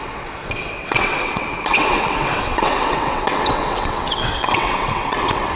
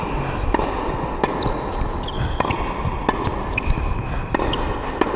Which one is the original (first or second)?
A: second